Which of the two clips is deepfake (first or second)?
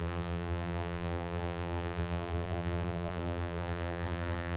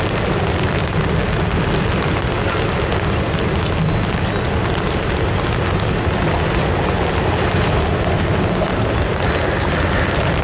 first